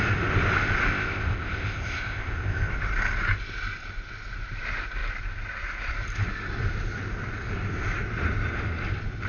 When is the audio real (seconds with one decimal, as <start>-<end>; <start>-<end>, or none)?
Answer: 0.0-0.9; 2.7-9.3